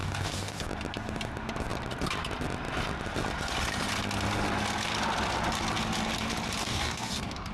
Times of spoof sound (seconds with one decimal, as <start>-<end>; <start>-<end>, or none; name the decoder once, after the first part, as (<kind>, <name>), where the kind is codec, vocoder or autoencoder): 0.0-0.7 (codec, DAC); 6.6-7.5